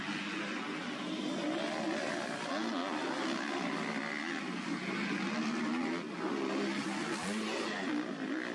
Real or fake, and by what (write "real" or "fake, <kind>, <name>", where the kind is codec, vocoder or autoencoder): real